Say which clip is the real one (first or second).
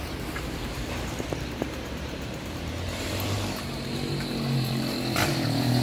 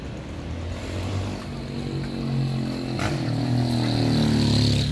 second